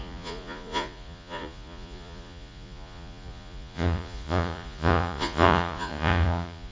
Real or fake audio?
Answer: fake